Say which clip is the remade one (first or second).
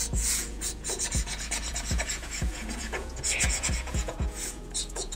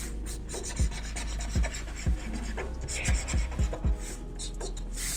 first